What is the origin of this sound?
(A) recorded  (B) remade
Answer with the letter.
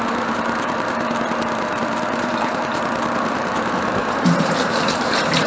B